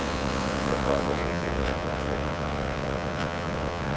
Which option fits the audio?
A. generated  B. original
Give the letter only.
A